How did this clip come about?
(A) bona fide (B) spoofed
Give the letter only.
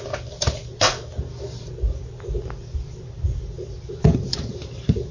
A